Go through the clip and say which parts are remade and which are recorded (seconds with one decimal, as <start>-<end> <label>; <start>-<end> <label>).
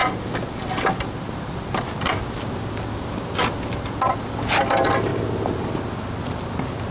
0.0-6.9 recorded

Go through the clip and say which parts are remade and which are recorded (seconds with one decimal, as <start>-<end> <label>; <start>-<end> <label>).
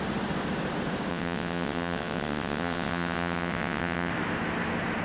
0.0-1.1 recorded; 1.1-4.1 remade; 4.1-5.0 recorded